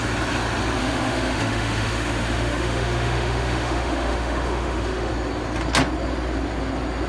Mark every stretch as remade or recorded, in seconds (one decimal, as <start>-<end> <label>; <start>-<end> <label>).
0.0-0.8 recorded; 0.8-5.1 remade; 5.1-7.1 recorded